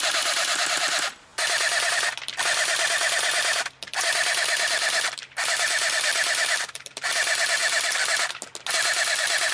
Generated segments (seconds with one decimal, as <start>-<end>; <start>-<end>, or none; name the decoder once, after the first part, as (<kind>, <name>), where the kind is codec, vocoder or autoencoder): 0.0-1.3 (vocoder, BigVGAN v2); 1.9-7.6; 8.7-9.5